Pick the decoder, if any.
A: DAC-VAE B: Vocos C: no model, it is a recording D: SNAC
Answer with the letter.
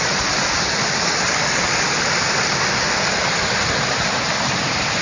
C